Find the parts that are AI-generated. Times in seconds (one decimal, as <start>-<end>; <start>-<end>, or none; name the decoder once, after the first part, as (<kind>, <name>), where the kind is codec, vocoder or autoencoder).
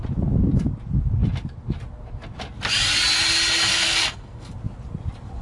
3.7-4.5 (codec, SNAC)